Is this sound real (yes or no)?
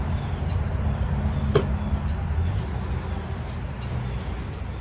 yes